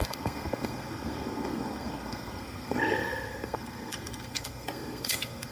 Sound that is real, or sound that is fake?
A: fake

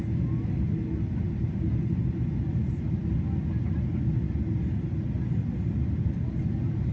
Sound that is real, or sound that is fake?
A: real